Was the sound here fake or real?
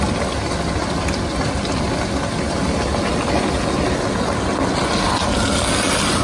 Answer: real